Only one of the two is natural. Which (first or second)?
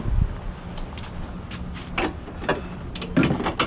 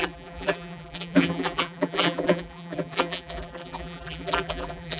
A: first